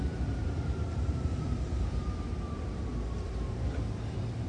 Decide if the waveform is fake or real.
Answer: fake